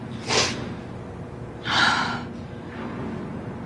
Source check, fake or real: real